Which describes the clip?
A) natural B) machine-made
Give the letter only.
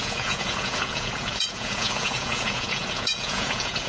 B